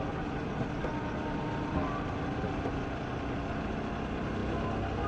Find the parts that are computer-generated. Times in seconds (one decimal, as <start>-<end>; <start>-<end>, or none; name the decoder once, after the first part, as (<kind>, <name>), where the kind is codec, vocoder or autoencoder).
none